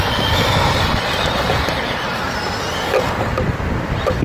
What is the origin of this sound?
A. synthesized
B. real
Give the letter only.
A